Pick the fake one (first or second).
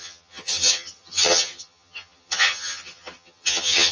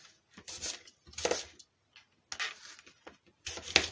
first